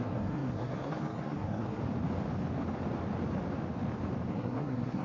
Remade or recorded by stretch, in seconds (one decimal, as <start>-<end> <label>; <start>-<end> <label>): 0.0-1.8 remade; 1.8-4.3 recorded; 4.3-5.0 remade